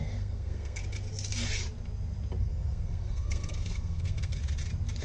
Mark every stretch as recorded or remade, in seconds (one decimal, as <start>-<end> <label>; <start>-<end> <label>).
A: 0.0-0.8 remade; 0.8-2.4 recorded; 2.4-4.4 remade; 4.4-5.0 recorded